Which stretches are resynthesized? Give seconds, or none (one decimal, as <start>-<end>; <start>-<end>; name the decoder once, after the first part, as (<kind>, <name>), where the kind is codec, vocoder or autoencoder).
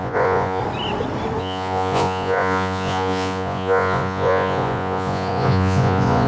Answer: 0.0-0.6 (vocoder, Vocos); 1.4-6.3